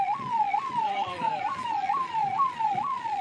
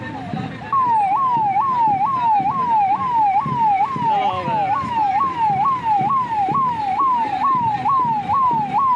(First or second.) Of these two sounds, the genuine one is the second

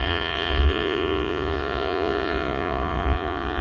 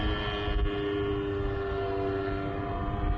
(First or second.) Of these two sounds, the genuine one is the second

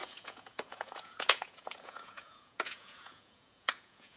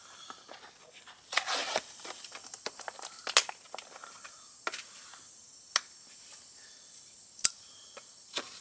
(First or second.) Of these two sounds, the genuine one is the second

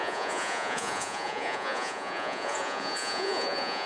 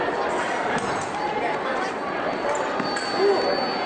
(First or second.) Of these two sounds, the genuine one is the second